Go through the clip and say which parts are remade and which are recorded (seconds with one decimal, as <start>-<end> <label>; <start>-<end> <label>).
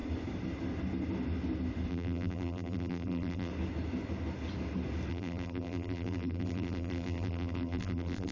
0.0-1.9 recorded; 1.9-3.5 remade; 3.5-5.1 recorded; 5.1-8.3 remade